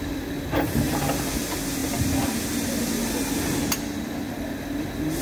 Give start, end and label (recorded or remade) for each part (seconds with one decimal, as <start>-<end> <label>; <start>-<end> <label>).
0.0-5.2 recorded